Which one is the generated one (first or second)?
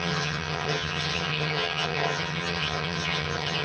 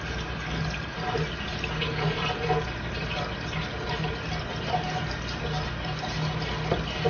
first